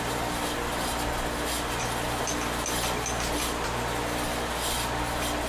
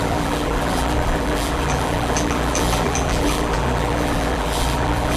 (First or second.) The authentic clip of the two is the first